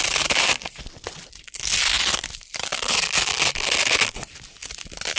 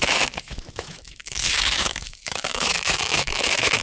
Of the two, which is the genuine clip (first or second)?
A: first